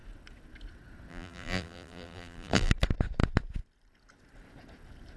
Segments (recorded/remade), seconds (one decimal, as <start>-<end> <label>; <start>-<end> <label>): 0.0-1.1 recorded; 1.1-2.7 remade; 2.7-5.2 recorded